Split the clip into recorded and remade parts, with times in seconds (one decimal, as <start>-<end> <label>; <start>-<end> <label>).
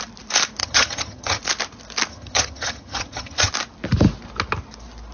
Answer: 0.0-0.6 recorded; 0.6-1.4 remade; 1.4-2.1 recorded; 2.1-3.5 remade; 3.5-5.1 recorded